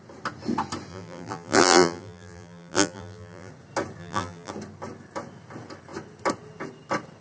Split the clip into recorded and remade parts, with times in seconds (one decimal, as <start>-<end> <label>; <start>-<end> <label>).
0.0-0.9 recorded; 0.9-3.5 remade; 3.5-4.0 recorded; 4.0-4.5 remade; 4.5-7.2 recorded